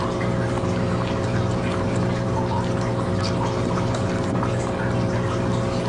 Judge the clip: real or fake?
real